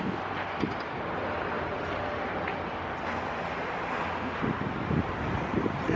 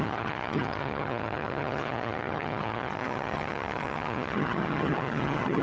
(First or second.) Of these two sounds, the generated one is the second